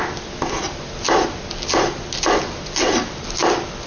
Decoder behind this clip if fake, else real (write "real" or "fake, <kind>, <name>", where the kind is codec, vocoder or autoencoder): real